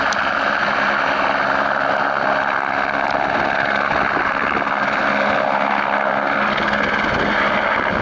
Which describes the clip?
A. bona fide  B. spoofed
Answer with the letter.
A